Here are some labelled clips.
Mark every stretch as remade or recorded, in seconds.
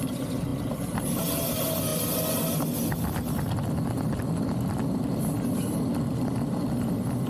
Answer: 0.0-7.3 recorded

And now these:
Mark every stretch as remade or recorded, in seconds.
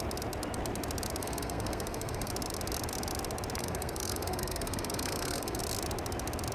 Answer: 0.0-1.2 recorded; 1.2-2.3 remade; 2.3-3.6 recorded; 3.6-5.6 remade; 5.6-6.5 recorded